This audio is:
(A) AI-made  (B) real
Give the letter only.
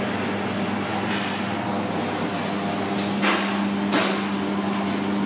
B